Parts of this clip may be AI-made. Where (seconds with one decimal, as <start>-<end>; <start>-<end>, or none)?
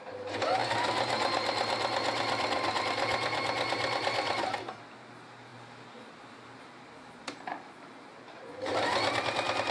7.2-8.7